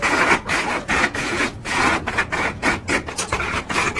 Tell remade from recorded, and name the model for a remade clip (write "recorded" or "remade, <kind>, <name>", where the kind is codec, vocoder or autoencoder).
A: remade, vocoder, Vocos